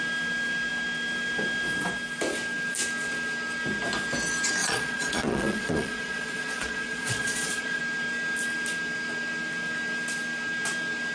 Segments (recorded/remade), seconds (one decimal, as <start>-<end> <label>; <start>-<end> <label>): 0.0-4.6 recorded; 4.6-7.8 remade; 7.8-11.1 recorded